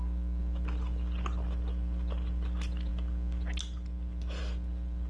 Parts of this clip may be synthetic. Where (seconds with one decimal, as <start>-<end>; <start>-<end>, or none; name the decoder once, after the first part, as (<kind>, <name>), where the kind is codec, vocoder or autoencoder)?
none